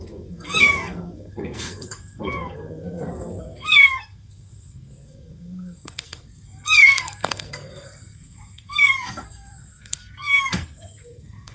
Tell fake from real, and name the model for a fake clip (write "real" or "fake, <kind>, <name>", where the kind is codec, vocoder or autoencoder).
fake, codec, SNAC